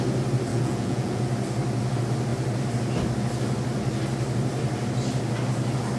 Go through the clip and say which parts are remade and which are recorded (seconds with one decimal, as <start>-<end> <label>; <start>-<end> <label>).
0.0-0.5 recorded; 0.5-1.2 remade; 1.2-6.0 recorded